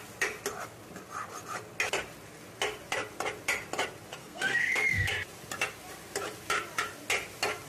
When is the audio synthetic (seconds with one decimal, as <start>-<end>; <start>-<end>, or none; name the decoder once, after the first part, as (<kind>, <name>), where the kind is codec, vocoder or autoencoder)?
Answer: 4.2-5.1 (codec, SNAC)